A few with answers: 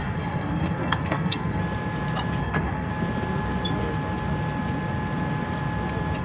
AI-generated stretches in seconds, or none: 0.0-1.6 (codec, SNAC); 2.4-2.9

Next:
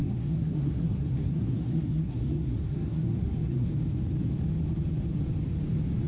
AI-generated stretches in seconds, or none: 0.0-3.7 (codec, SNAC)

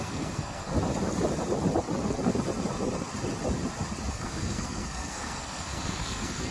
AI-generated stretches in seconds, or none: 0.0-0.7 (codec, SNAC); 4.1-6.5